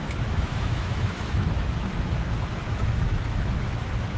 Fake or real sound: fake